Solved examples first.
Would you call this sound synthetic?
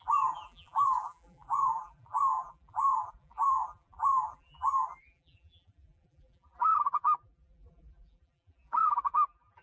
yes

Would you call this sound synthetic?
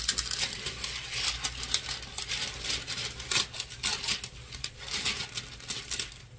no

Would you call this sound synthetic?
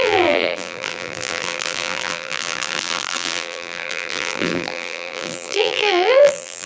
yes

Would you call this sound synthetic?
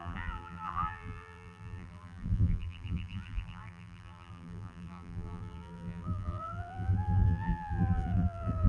yes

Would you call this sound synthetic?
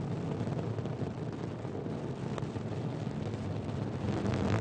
no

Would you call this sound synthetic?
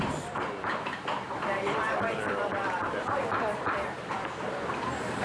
yes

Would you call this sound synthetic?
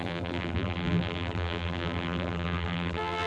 yes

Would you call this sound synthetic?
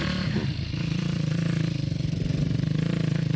yes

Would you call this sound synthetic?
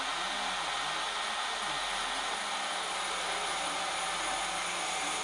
no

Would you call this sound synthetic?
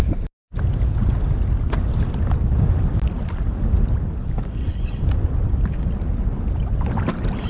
no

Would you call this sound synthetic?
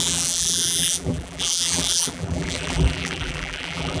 yes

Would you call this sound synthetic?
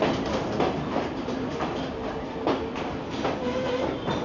no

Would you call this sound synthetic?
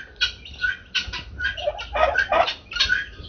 no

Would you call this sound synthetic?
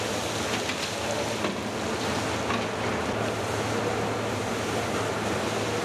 no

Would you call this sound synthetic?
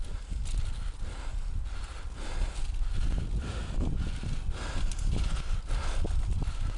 no